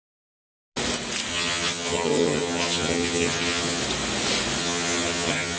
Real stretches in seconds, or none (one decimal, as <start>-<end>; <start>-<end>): 0.0-1.3; 3.8-4.6